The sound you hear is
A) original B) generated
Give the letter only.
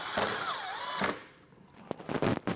A